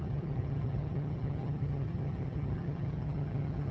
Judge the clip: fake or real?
fake